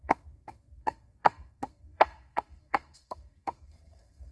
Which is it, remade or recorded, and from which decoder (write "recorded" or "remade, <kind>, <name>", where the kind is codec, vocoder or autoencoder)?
remade, codec, SNAC